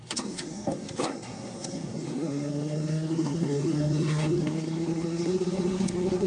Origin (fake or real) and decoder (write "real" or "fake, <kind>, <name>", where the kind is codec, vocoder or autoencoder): fake, codec, SNAC